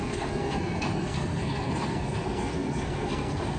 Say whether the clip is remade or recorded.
remade